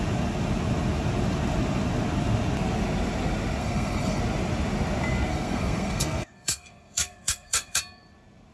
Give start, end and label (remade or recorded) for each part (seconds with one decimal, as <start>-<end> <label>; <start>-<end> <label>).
0.0-3.6 recorded; 3.6-4.2 remade; 4.2-5.3 recorded; 5.3-7.8 remade; 7.8-8.5 recorded